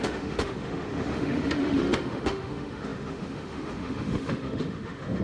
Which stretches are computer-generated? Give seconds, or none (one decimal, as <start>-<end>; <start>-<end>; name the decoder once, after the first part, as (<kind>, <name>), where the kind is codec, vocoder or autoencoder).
0.0-5.2 (autoencoder, DAC-VAE)